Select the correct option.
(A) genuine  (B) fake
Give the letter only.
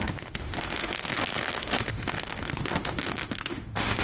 B